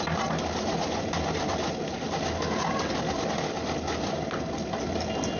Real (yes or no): yes